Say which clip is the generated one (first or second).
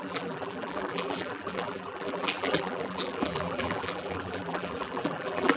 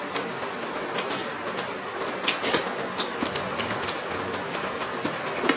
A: first